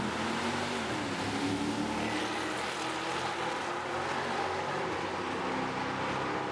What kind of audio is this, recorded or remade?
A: recorded